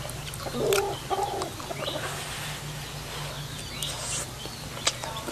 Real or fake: real